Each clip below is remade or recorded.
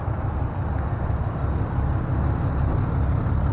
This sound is recorded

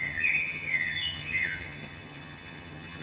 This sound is remade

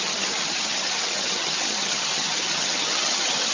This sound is remade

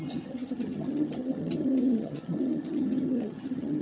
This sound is remade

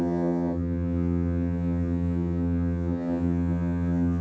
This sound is remade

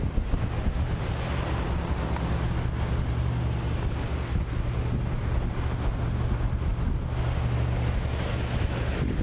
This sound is recorded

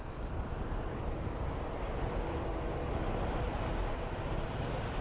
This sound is recorded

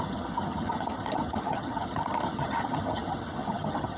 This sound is remade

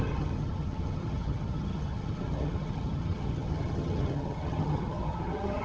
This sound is remade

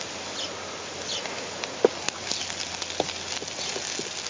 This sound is recorded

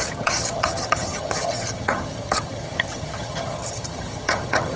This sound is remade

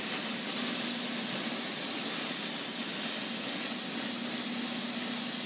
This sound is recorded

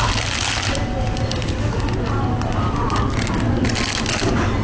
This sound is recorded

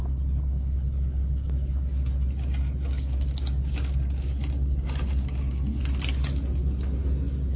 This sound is recorded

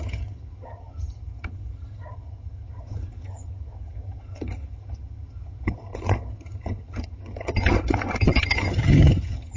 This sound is remade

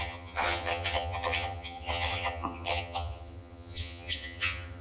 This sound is remade